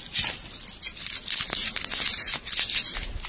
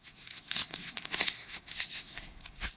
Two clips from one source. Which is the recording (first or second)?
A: first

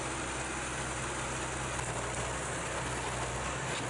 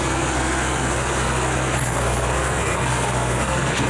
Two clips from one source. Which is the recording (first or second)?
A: first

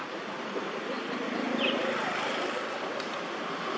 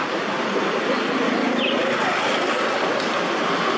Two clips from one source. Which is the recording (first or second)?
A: second